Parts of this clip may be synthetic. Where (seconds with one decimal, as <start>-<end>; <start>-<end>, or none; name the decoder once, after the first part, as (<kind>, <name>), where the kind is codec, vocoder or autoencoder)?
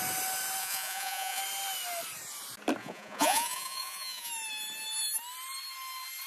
0.6-1.4 (vocoder, Vocos); 2.8-4.3